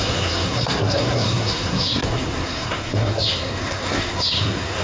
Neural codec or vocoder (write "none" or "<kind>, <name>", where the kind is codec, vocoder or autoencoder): codec, SNAC